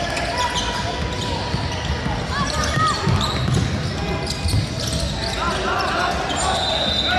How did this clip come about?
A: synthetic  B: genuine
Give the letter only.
B